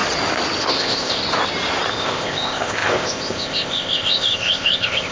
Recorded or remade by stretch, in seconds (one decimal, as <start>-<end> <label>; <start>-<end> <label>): 0.0-0.6 recorded; 0.6-1.2 remade; 1.2-1.9 recorded; 1.9-5.1 remade